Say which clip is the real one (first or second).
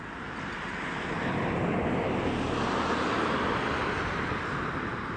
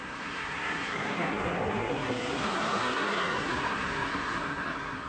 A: first